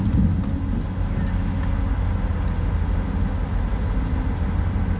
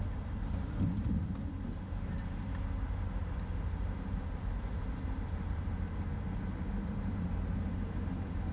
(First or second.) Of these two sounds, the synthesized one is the second